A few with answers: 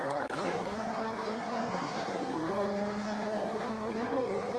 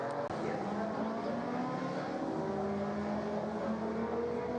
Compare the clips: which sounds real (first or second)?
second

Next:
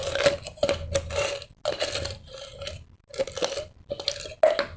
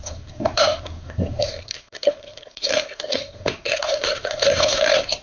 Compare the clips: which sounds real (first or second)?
first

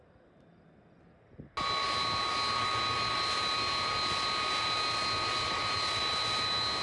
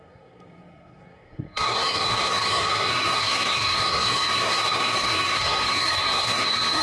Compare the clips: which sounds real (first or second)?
first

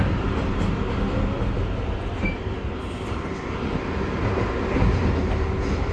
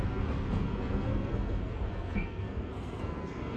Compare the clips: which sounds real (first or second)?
first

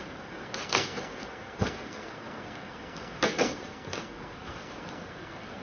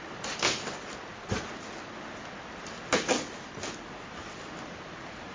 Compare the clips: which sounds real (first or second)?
second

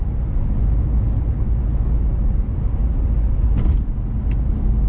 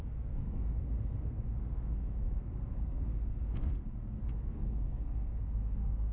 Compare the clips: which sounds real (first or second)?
first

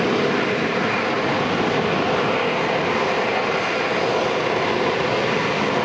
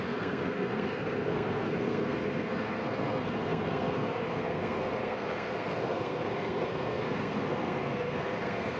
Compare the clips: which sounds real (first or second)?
first